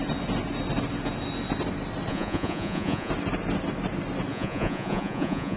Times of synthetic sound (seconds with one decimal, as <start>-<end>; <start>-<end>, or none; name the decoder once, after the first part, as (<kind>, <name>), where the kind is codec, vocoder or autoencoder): 2.1-3.1 (vocoder, Vocos); 4.3-5.6

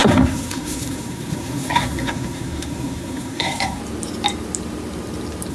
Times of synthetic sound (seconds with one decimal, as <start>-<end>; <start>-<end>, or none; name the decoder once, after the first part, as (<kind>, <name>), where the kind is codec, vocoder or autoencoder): 0.0-3.8 (codec, SNAC)

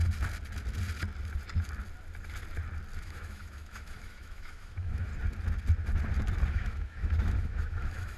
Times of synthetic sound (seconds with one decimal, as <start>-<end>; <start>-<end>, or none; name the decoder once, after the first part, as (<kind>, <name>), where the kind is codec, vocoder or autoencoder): 3.0-5.1 (autoencoder, DAC-VAE); 6.5-8.2